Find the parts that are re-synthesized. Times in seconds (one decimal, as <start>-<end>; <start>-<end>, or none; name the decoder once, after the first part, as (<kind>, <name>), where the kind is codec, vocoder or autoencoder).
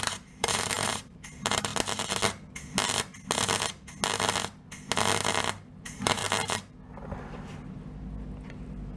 0.0-1.7 (vocoder, BigVGAN v2); 5.7-6.2; 8.5-9.0